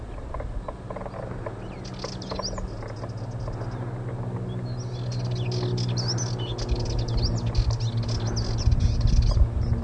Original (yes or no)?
yes